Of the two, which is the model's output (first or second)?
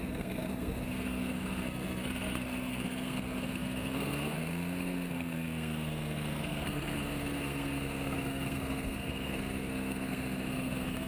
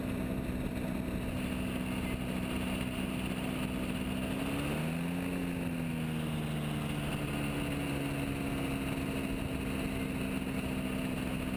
first